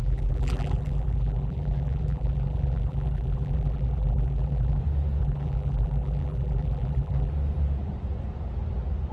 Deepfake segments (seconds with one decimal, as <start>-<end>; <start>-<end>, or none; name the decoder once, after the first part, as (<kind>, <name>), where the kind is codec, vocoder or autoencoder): 0.0-4.8 (vocoder, BigVGAN v2); 5.2-7.3